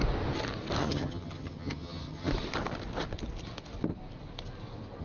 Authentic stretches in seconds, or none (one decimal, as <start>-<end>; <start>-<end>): 0.0-0.8; 2.3-5.0